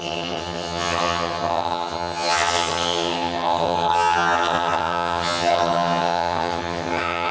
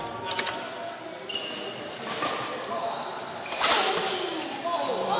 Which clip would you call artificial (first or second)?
first